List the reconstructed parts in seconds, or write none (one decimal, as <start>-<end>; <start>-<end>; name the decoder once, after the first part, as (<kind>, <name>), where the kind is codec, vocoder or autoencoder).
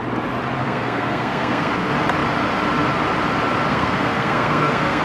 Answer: 0.6-1.7 (codec, SNAC); 3.7-5.0